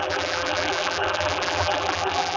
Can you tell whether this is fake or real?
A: fake